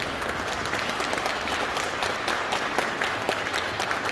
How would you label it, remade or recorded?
recorded